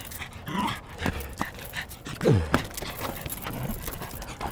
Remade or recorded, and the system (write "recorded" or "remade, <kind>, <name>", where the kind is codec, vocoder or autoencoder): recorded